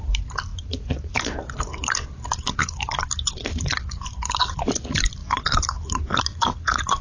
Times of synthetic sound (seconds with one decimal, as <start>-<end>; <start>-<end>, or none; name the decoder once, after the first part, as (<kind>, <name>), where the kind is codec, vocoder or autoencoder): none

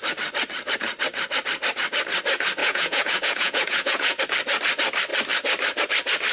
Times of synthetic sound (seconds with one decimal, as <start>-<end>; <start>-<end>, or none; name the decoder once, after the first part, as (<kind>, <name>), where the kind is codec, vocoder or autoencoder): 2.6-4.2 (vocoder, Vocos)

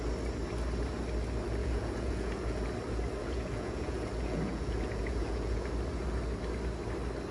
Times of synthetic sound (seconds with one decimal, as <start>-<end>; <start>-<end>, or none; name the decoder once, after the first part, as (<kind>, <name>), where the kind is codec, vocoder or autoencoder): 1.6-2.6 (vocoder, Vocos); 3.2-5.7

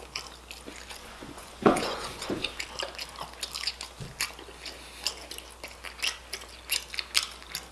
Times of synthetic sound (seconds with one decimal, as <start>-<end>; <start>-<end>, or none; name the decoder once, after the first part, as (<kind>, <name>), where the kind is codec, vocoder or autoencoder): 1.0-2.3 (vocoder, Vocos)